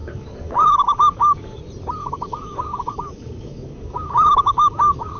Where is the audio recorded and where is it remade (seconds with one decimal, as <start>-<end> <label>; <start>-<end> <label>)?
0.0-1.6 remade; 1.6-2.0 recorded; 2.0-5.2 remade